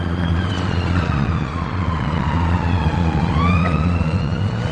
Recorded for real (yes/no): no